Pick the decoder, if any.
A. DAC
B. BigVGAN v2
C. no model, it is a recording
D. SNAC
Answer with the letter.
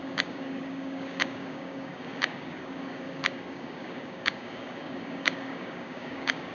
A